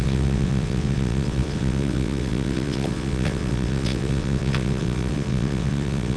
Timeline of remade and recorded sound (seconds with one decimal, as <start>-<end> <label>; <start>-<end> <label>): 0.0-6.2 remade